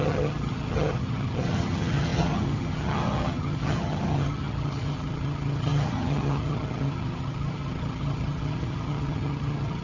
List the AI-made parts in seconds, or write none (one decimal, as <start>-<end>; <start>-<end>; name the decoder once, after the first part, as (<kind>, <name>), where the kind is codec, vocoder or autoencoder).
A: 0.0-9.8 (vocoder, HiFi-GAN)